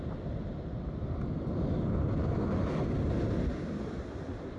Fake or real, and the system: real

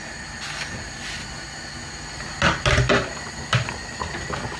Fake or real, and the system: real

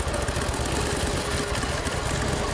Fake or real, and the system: real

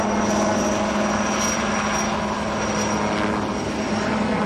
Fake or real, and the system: real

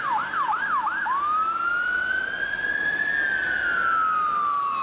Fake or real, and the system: real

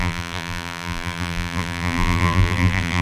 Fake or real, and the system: fake, vocoder, BigVGAN v2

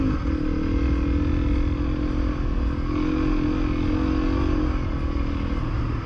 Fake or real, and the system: real